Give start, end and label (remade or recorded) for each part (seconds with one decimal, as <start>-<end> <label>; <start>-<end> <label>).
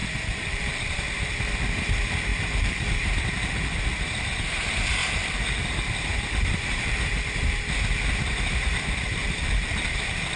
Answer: 0.0-1.3 remade; 1.3-2.3 recorded; 2.3-3.6 remade; 3.6-5.0 recorded; 5.0-7.0 remade; 7.0-9.2 recorded; 9.2-10.0 remade; 10.0-10.4 recorded